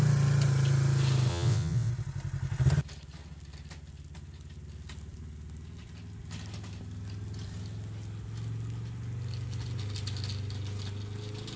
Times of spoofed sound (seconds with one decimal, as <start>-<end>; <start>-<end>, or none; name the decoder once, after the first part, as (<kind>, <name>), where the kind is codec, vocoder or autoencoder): 1.3-1.9 (vocoder, WaveNeXt)